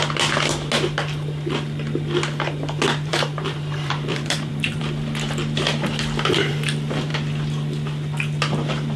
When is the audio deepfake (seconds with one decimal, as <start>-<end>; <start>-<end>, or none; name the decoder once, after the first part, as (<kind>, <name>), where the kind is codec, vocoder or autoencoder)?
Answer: 3.1-4.8 (vocoder, BigVGAN v2)